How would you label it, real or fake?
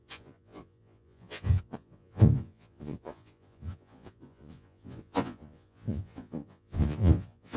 fake